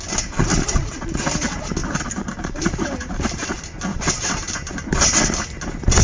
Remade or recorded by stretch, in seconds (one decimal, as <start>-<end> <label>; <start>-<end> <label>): 0.0-1.8 recorded; 1.8-3.2 remade; 3.2-3.9 recorded; 3.9-4.7 remade; 4.7-6.0 recorded